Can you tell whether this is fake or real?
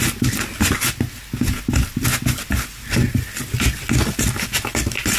real